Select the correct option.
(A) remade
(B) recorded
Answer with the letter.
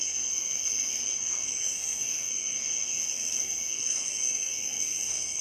A